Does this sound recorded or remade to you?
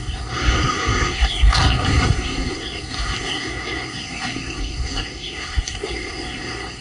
remade